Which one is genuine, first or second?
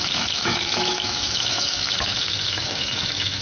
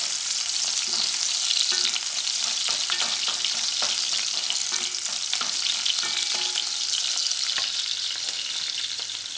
second